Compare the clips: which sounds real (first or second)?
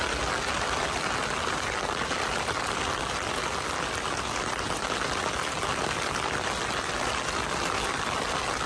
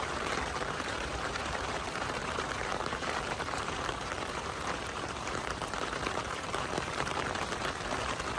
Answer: first